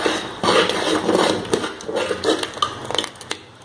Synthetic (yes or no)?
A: no